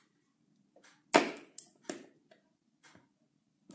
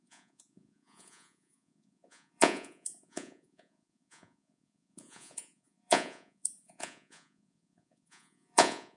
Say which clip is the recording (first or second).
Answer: first